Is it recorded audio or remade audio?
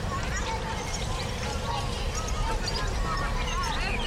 remade